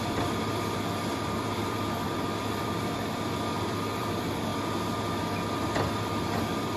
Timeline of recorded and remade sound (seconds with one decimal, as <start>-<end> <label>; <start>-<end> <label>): 0.0-4.5 remade; 4.5-6.0 recorded; 6.0-6.8 remade